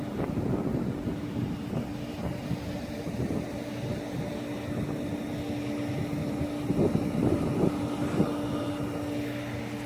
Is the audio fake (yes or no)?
yes